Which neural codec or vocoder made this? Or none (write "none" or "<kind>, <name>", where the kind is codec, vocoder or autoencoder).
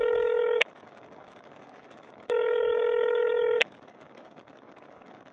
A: codec, DAC